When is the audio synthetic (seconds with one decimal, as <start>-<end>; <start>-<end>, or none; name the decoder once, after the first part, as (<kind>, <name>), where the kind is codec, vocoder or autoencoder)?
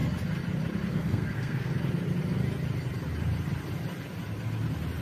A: 0.9-1.7 (codec, SNAC)